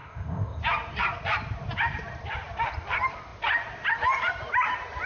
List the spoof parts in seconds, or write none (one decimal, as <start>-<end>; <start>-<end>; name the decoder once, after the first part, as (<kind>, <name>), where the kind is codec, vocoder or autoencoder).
0.0-0.6 (codec, ZipCodec)